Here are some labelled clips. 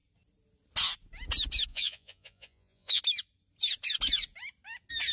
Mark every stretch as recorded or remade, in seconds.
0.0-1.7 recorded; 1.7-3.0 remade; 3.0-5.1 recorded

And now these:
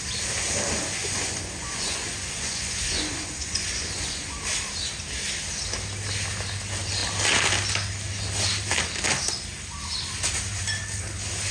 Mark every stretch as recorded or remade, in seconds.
0.0-1.0 recorded; 1.0-4.4 remade; 4.4-11.5 recorded

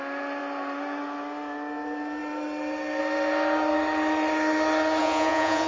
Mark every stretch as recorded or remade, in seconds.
0.0-5.0 recorded; 5.0-5.7 remade

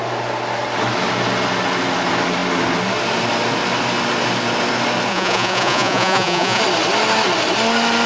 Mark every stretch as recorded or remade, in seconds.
0.0-5.1 recorded; 5.1-6.6 remade; 6.6-8.1 recorded